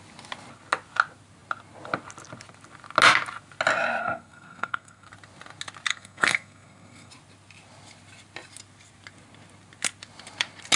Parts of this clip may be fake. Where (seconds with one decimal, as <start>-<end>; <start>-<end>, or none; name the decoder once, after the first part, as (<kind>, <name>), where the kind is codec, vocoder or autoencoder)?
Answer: 4.0-5.1 (codec, SNAC); 5.9-7.1